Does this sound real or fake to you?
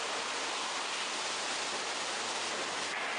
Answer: real